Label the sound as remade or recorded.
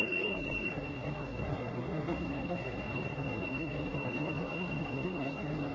remade